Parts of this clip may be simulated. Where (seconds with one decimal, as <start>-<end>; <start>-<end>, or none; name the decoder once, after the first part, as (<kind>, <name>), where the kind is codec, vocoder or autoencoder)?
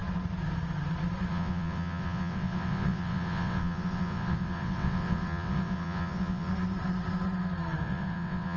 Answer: 1.3-6.5 (vocoder, WaveNeXt); 7.8-8.6